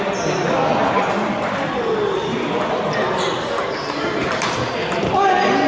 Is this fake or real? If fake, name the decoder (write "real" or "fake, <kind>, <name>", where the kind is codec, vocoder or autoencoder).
real